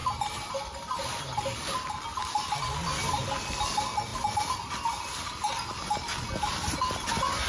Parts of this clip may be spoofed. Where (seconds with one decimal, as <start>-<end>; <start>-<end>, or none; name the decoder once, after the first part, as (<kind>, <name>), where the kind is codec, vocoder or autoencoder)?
0.0-1.2 (vocoder, BigVGAN v2)